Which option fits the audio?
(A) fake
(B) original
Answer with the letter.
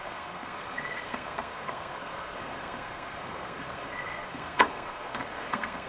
A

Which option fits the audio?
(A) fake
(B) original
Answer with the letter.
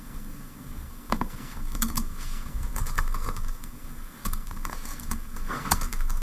A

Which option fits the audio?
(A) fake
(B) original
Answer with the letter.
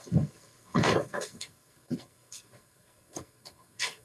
A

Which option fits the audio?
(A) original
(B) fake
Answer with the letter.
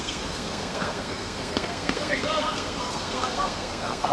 B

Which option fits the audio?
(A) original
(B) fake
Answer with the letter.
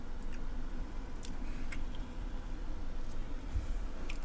A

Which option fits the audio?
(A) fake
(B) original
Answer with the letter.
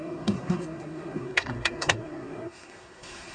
A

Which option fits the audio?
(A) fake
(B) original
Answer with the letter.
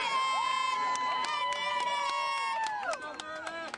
B